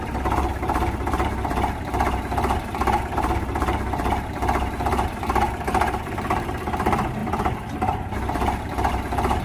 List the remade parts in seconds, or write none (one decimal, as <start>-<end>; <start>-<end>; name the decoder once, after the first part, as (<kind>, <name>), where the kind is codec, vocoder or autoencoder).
0.0-9.4 (vocoder, BigVGAN v2)